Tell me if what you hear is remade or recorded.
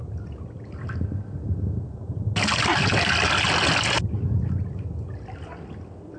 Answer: recorded